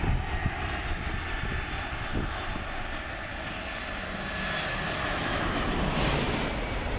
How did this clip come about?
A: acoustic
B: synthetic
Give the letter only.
A